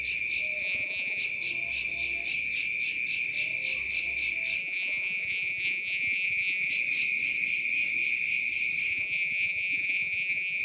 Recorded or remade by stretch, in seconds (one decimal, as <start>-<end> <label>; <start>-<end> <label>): 0.0-0.6 recorded; 0.6-1.2 remade; 1.2-4.6 recorded; 4.6-6.7 remade; 6.7-8.9 recorded; 8.9-10.6 remade